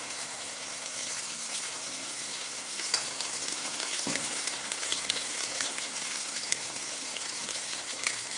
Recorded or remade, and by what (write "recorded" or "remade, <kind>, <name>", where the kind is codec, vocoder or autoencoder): remade, codec, SNAC